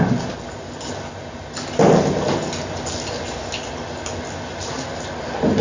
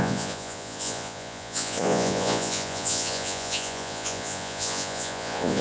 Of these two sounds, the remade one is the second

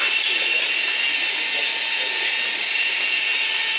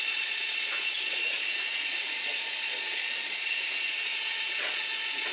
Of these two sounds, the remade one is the second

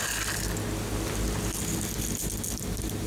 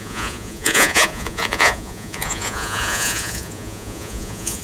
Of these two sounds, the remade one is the second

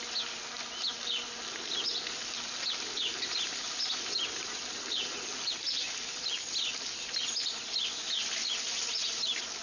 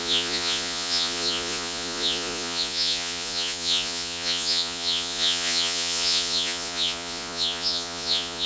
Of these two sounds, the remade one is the second